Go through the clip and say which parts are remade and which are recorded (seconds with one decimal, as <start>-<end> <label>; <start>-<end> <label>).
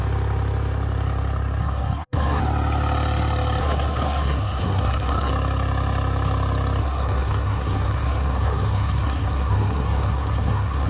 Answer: 0.0-1.6 recorded; 1.6-2.4 remade; 2.4-3.6 recorded; 3.6-5.3 remade; 5.3-6.8 recorded; 6.8-10.9 remade